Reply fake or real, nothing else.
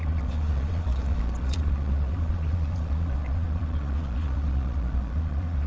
fake